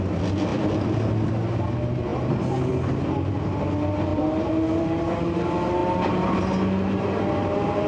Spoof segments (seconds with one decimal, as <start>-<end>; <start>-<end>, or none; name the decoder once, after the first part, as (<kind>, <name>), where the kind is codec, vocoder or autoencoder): 0.5-1.3 (vocoder, BigVGAN v2); 4.1-5.0